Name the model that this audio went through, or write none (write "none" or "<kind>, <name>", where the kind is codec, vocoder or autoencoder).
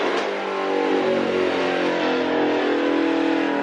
none